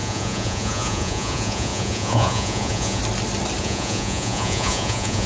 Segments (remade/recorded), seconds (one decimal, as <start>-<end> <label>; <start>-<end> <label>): 0.0-3.0 remade; 3.0-3.6 recorded; 3.6-5.3 remade